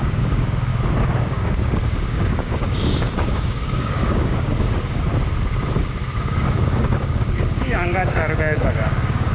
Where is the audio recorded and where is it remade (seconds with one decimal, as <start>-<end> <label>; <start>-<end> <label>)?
0.0-0.7 remade; 0.7-1.2 recorded; 1.2-5.1 remade; 5.1-6.2 recorded; 6.2-9.3 remade